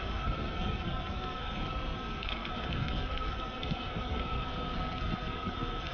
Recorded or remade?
remade